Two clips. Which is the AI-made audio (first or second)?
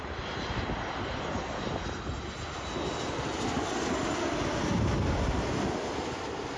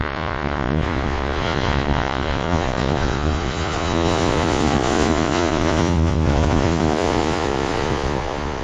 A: second